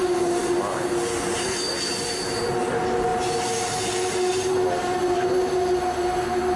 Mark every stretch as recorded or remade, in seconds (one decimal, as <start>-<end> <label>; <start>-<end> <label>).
0.0-6.6 recorded